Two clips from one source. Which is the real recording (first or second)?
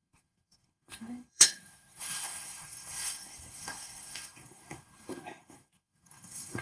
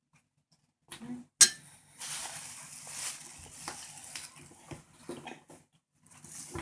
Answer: second